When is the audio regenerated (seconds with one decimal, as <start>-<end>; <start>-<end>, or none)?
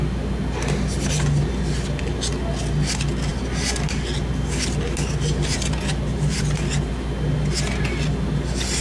6.1-6.9